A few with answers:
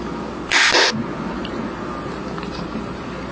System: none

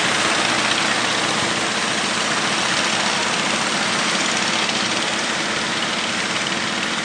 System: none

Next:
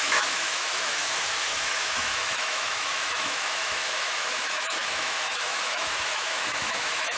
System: autoencoder, DAC-VAE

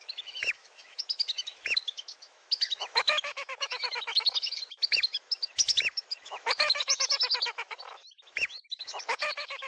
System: autoencoder, DAC-VAE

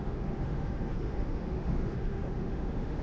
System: autoencoder, DAC-VAE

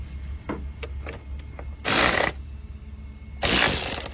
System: none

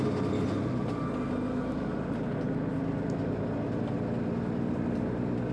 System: none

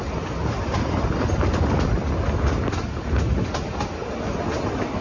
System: none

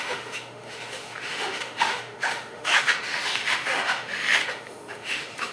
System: autoencoder, DAC-VAE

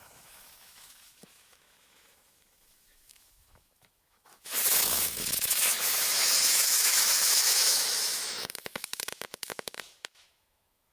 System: autoencoder, DAC-VAE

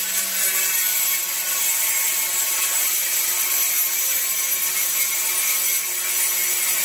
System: none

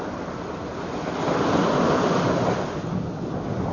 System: none